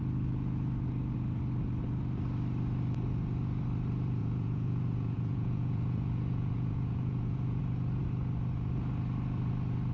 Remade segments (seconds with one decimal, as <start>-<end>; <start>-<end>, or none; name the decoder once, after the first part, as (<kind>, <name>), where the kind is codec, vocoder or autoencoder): 4.2-7.6 (vocoder, Vocos)